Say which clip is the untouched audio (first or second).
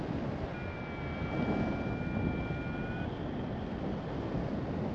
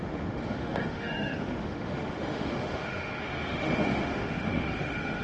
first